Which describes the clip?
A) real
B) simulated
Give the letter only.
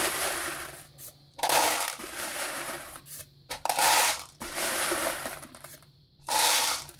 B